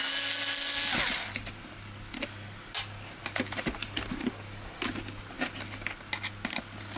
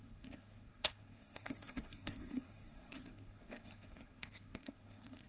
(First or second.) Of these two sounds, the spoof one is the second